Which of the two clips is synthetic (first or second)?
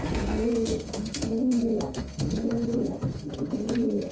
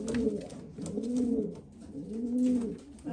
first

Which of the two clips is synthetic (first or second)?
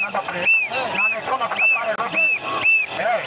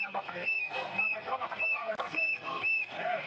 second